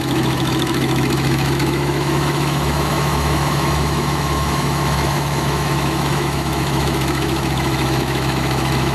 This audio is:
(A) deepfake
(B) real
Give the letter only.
A